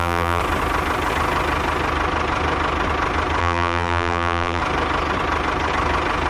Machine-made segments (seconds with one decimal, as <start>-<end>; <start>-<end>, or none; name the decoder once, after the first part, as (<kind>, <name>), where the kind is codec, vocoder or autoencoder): 0.0-0.4 (vocoder, BigVGAN v2); 3.4-4.6